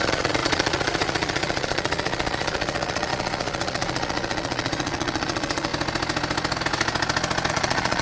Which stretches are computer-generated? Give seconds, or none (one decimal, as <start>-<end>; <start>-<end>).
0.0-5.7; 7.5-8.0